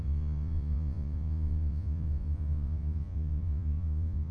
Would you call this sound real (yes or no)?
no